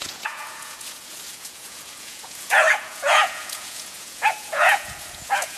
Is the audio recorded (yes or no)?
no